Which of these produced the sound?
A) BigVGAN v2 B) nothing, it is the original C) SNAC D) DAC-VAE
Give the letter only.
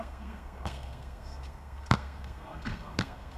C